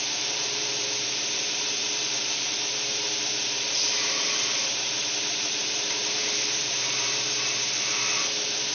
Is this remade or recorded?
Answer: remade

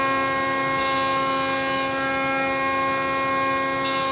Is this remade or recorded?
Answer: recorded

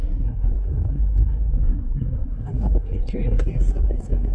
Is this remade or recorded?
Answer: remade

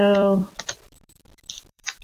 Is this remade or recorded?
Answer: remade